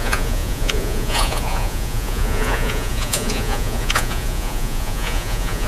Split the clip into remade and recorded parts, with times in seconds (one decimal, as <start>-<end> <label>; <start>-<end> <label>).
0.0-5.7 remade